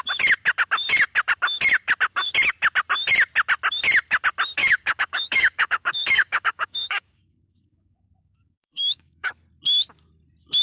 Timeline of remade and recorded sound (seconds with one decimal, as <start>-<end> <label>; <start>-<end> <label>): 0.0-4.6 recorded; 4.6-9.3 remade; 9.3-10.6 recorded